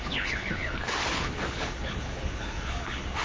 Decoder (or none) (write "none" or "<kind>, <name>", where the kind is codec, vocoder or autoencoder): codec, HILCodec